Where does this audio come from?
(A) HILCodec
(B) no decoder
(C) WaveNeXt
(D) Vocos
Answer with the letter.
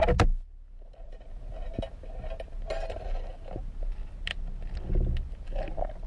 B